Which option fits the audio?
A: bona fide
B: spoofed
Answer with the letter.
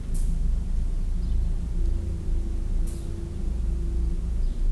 A